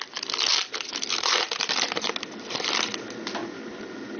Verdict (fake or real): real